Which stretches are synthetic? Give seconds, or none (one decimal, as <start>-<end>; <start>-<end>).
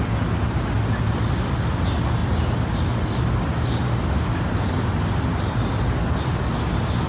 none